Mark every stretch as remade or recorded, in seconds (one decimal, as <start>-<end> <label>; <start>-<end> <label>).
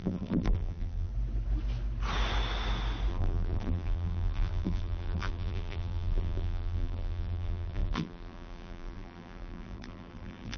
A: 0.0-1.1 remade; 1.1-3.1 recorded; 3.1-10.6 remade